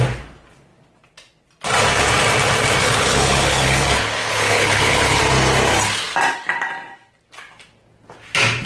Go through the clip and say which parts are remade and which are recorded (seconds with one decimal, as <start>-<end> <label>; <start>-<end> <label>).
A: 0.0-2.8 recorded; 2.8-5.2 remade; 5.2-8.7 recorded